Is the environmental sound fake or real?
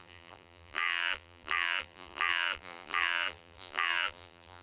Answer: fake